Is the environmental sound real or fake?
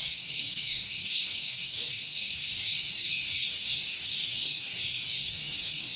fake